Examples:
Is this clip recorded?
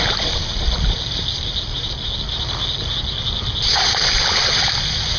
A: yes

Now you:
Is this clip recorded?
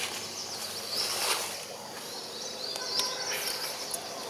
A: yes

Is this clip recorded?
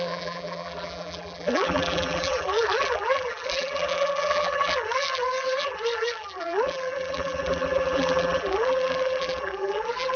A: no